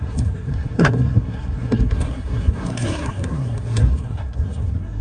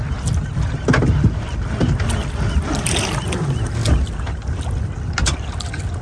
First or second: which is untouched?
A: second